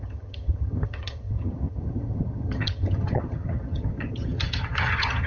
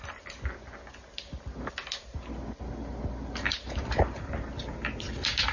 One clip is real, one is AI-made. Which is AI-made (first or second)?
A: first